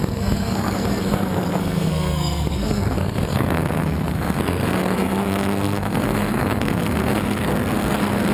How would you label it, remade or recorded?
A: remade